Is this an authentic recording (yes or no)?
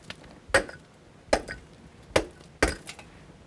yes